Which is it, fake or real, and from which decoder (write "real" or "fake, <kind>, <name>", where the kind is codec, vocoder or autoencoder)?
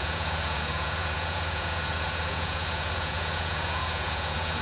fake, vocoder, Vocos